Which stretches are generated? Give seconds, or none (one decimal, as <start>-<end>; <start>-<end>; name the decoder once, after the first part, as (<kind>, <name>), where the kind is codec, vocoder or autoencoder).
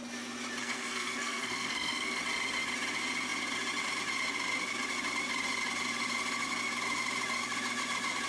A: 0.6-2.2 (codec, SNAC)